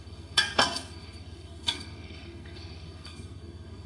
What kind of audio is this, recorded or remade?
remade